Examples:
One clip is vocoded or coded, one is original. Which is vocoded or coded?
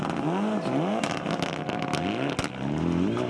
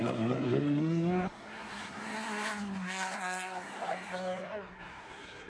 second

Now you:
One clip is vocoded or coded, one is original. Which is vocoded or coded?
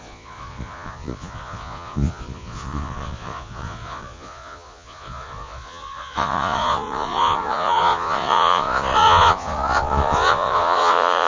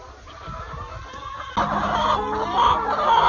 first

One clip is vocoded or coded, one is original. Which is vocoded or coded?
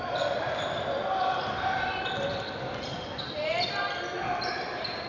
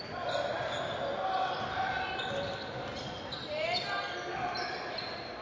first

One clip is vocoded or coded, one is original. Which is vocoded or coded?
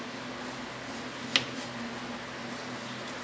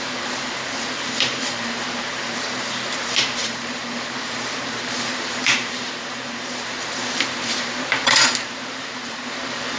second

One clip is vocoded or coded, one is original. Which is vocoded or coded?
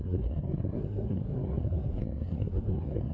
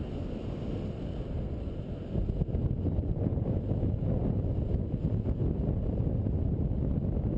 first